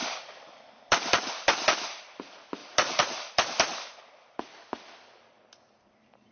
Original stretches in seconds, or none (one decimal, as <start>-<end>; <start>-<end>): 2.2-2.6; 4.0-6.3